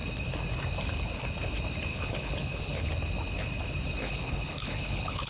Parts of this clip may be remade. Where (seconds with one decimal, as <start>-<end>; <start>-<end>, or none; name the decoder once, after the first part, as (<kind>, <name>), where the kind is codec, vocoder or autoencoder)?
1.9-2.9 (codec, HILCodec); 4.0-5.3